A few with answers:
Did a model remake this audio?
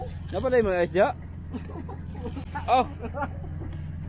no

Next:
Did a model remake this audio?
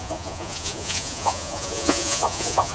yes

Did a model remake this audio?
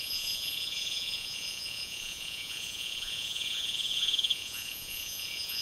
yes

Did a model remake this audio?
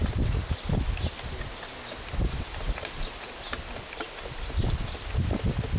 no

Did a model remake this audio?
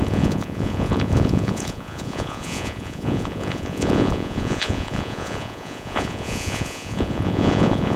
yes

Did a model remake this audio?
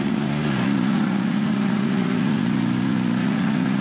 yes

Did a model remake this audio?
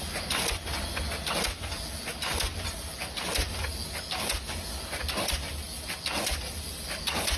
no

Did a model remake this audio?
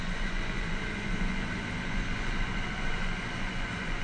yes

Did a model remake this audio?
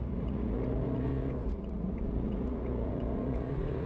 yes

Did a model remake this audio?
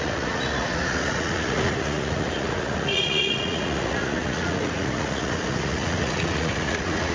yes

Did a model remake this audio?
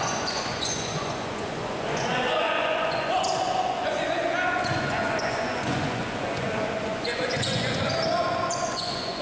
yes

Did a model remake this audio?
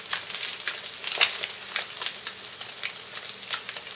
no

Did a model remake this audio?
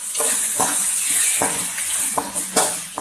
yes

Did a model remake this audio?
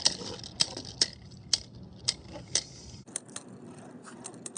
no